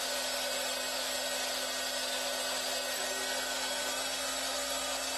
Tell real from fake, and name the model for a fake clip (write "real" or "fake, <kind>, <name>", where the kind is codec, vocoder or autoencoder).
real